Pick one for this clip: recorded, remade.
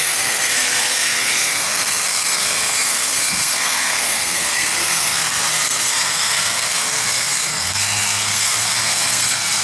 remade